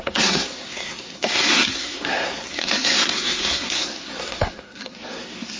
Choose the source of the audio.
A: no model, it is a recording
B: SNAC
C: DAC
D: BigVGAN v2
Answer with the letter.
B